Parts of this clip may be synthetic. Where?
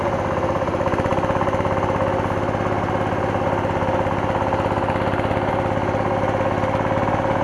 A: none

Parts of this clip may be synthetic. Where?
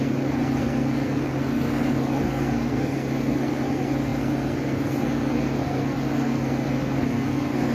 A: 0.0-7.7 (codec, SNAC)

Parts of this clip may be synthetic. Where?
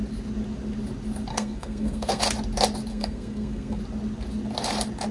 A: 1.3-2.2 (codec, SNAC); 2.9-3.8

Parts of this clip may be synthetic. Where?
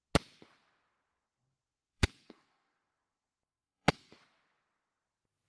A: 1.2-4.1 (codec, SNAC)